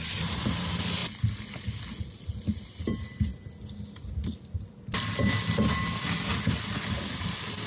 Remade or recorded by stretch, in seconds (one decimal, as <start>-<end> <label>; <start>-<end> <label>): 0.0-7.7 recorded